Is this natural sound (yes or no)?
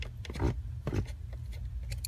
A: yes